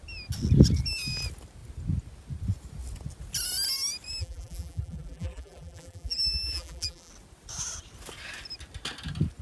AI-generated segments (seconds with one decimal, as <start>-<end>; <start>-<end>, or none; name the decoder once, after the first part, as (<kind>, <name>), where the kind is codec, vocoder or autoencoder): 4.2-7.1 (vocoder, BigVGAN v2)